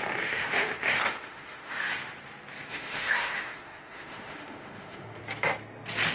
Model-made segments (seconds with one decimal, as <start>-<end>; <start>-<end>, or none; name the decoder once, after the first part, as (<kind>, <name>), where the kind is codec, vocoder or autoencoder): 0.0-2.0 (autoencoder, DAC-VAE); 2.7-5.2